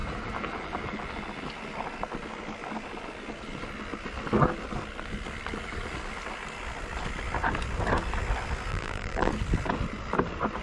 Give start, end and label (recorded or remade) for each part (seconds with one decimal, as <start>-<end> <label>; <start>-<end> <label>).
0.0-8.7 recorded; 8.7-9.3 remade; 9.3-10.6 recorded